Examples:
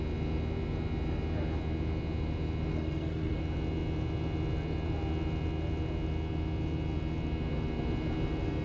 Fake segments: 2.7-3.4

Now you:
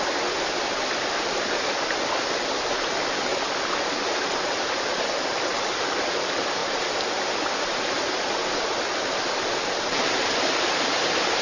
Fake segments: 0.0-3.3; 5.7-6.6; 9.3-11.4

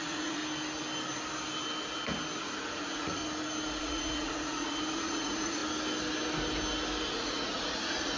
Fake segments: 0.0-0.4; 2.4-3.2; 3.8-5.6; 7.1-8.2